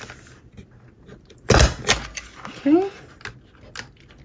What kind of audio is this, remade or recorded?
recorded